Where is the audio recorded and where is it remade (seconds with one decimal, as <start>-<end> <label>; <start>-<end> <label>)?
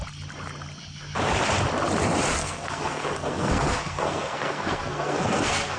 0.0-2.4 recorded; 2.4-5.8 remade